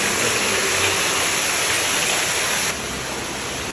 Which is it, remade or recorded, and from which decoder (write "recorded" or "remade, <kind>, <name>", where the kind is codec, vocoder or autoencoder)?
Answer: recorded